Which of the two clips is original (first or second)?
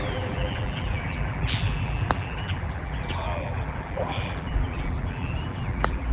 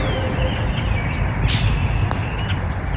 second